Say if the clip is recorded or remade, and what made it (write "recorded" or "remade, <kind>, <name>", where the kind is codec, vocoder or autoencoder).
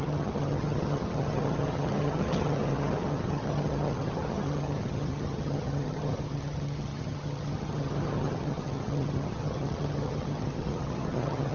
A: remade, vocoder, HiFi-GAN